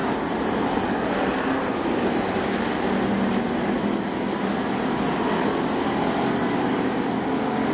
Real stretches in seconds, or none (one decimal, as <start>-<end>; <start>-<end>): 0.0-7.7